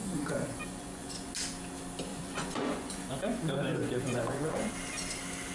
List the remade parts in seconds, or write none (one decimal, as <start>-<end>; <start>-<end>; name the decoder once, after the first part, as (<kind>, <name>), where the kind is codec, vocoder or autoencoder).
0.0-1.3 (vocoder, Vocos); 2.1-4.7